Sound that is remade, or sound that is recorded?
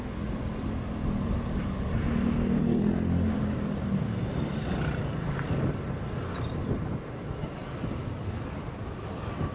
recorded